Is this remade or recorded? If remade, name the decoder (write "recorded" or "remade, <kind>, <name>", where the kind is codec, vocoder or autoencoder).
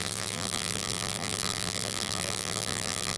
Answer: remade, vocoder, BigVGAN v2